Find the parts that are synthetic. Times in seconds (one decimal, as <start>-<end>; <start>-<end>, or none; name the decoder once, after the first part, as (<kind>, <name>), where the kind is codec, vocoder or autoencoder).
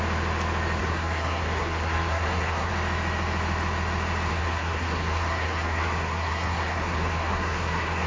0.8-2.7 (codec, SNAC); 4.3-8.1